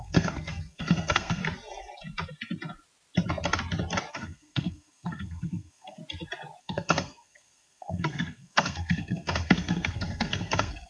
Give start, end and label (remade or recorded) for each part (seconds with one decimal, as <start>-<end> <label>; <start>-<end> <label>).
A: 0.0-1.4 remade; 1.4-4.1 recorded; 4.1-6.0 remade; 6.0-6.6 recorded; 6.6-10.9 remade